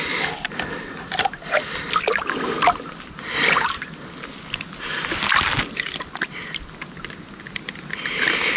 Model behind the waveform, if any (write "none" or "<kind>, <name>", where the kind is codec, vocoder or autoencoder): none